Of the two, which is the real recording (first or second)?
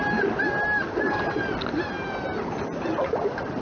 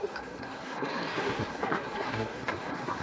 first